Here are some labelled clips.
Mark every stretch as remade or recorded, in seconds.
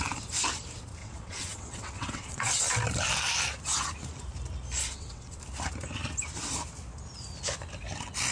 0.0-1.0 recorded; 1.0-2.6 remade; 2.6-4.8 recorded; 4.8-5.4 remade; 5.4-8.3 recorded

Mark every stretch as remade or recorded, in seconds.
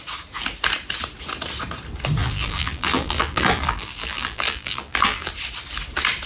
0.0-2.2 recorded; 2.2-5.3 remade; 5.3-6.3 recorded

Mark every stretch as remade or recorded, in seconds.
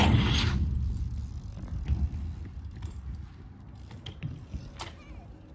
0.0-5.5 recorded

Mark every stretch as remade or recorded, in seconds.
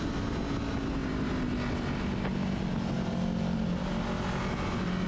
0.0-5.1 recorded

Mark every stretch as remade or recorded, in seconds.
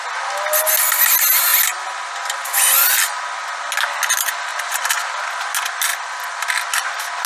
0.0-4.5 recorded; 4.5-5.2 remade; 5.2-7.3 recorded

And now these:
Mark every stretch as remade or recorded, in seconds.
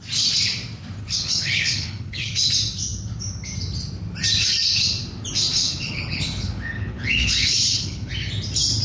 0.0-1.0 recorded; 1.0-2.5 remade; 2.5-5.6 recorded; 5.6-8.1 remade; 8.1-8.8 recorded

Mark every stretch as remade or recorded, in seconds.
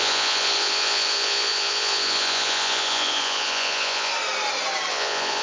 0.0-4.1 remade; 4.1-4.9 recorded; 4.9-5.4 remade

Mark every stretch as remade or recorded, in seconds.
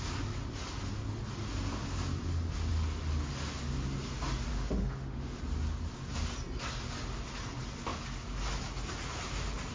0.0-4.5 recorded; 4.5-5.4 remade; 5.4-9.7 recorded